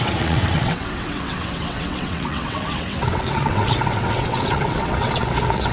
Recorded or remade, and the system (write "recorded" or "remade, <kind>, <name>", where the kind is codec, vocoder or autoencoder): remade, vocoder, WaveNeXt